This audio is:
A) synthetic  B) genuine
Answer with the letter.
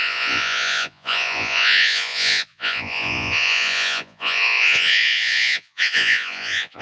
A